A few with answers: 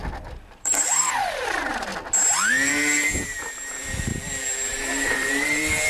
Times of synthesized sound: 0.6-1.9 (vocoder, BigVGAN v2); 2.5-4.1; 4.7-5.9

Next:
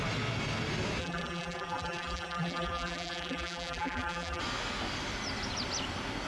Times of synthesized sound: 1.0-4.4 (vocoder, BigVGAN v2)

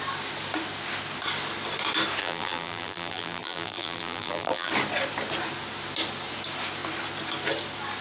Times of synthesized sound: 2.2-4.7 (vocoder, BigVGAN v2)

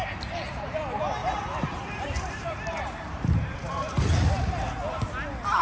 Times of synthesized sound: 1.2-4.6 (vocoder, BigVGAN v2)

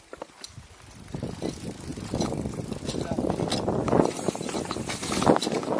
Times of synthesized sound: none

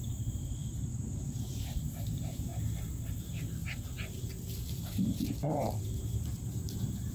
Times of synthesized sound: 0.0-2.5 (vocoder, BigVGAN v2); 3.2-3.6; 5.8-7.1

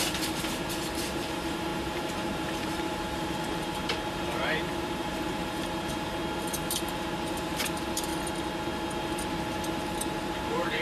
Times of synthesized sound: 0.0-6.2 (vocoder, BigVGAN v2); 6.8-8.1; 9.0-10.8

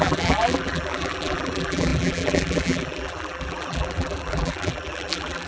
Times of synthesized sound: 0.0-5.5 (vocoder, BigVGAN v2)